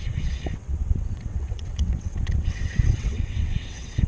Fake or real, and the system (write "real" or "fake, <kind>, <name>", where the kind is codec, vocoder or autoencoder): fake, vocoder, WaveNeXt